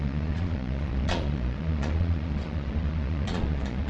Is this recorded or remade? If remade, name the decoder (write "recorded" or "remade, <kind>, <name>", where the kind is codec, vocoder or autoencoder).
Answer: remade, vocoder, Vocos